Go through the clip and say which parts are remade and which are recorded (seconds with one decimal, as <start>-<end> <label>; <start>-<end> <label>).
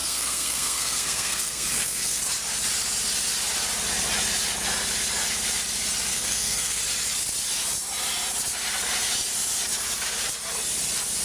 0.0-2.2 remade; 2.2-6.1 recorded; 6.1-6.8 remade; 6.8-11.2 recorded